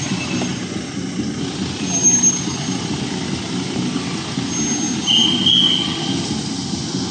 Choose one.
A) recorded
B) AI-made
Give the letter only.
A